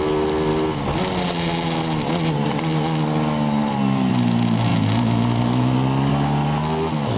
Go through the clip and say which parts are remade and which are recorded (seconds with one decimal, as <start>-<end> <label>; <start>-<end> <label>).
0.0-7.2 recorded